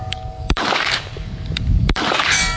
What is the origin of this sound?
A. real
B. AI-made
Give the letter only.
B